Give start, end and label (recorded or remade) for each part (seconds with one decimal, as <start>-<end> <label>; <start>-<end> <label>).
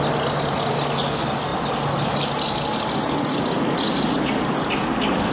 0.0-5.3 recorded